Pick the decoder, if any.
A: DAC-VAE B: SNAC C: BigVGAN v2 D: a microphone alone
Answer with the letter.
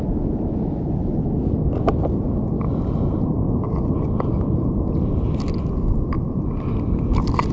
D